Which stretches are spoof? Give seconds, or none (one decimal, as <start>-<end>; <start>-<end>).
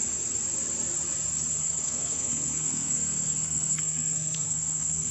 1.6-5.1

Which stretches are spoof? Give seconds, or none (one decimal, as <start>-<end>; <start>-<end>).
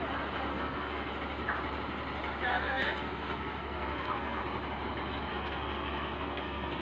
0.5-1.1; 2.5-4.4; 5.3-6.8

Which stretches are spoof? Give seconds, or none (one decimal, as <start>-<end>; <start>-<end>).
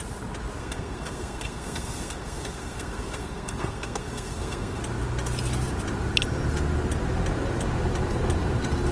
0.6-4.8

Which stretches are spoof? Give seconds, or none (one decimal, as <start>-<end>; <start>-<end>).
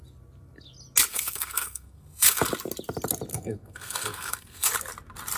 1.1-2.4; 3.3-4.7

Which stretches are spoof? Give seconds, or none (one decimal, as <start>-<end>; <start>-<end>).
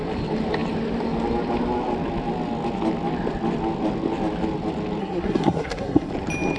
5.0-6.1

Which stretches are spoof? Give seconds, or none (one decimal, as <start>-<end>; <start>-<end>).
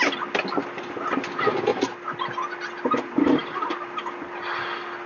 none